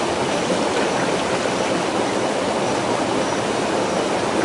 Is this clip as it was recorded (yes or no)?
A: yes